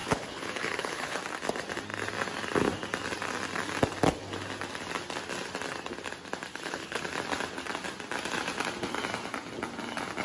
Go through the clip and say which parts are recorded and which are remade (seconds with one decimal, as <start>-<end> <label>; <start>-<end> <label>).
0.0-1.2 remade; 1.2-6.5 recorded; 6.5-7.0 remade; 7.0-10.2 recorded